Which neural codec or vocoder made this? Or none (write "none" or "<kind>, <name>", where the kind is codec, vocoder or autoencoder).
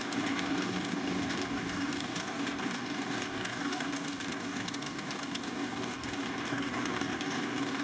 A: codec, DAC